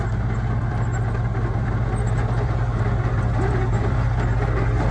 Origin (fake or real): real